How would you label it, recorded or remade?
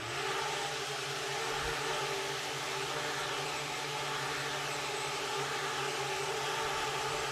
recorded